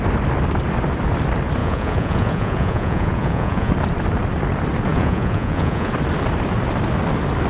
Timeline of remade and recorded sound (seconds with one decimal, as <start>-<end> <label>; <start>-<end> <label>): 0.0-1.6 recorded; 1.6-3.7 remade; 3.7-4.9 recorded; 4.9-5.9 remade; 5.9-7.5 recorded